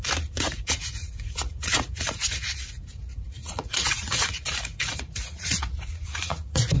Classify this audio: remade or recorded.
remade